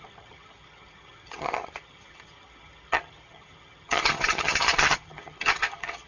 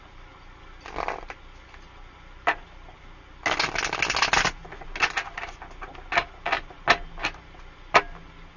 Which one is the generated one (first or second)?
first